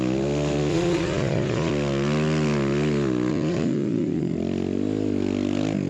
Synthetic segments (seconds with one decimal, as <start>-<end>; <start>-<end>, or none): 0.7-1.7; 3.3-4.3